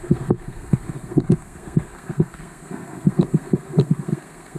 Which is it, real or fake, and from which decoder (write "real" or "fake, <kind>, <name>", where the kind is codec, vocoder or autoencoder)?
fake, codec, SNAC